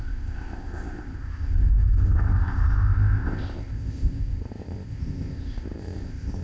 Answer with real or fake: fake